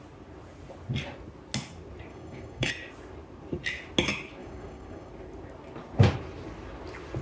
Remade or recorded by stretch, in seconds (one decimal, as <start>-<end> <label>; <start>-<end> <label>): 0.0-2.1 recorded; 2.1-2.7 remade; 2.7-4.4 recorded; 4.4-5.1 remade; 5.1-7.2 recorded